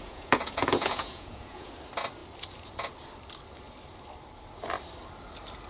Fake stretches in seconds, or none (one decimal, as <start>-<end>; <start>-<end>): 0.0-1.7